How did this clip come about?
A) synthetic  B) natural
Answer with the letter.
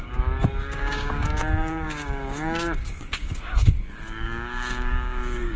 A